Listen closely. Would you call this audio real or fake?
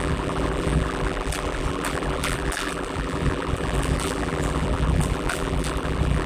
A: fake